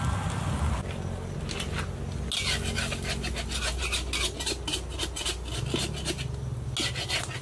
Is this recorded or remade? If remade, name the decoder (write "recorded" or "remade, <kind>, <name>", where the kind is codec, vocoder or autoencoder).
recorded